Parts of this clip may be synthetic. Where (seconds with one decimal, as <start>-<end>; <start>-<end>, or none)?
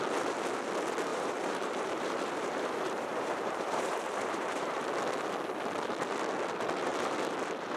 1.1-4.8